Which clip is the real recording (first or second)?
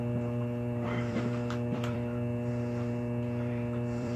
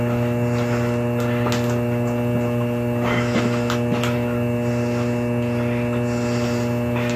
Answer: second